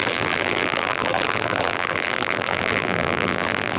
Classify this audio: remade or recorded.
remade